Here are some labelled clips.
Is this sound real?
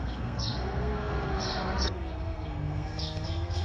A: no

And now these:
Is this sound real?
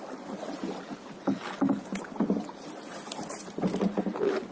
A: yes